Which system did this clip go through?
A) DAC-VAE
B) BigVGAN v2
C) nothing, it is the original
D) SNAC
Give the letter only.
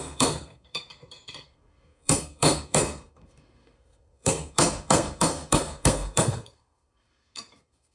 D